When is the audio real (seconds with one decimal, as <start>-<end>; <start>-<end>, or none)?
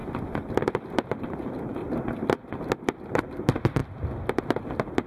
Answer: 1.2-1.8; 3.2-5.1